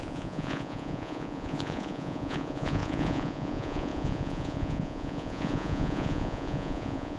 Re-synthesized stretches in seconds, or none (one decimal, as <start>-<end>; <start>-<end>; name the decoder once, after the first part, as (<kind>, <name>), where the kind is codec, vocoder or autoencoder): 0.0-7.2 (vocoder, Vocos)